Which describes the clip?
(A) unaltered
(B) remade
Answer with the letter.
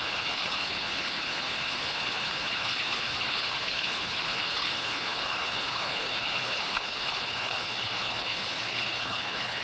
B